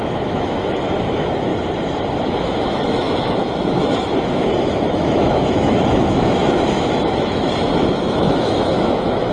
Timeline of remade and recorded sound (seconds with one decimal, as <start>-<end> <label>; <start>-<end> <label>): 0.0-1.5 remade; 1.5-2.4 recorded; 2.4-9.3 remade